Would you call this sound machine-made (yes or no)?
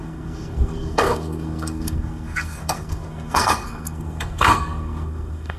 yes